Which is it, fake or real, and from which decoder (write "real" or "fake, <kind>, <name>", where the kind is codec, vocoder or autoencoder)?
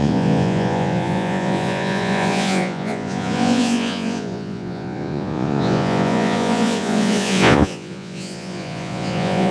fake, vocoder, Vocos